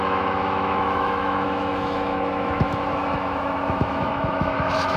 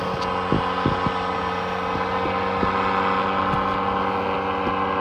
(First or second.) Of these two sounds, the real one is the second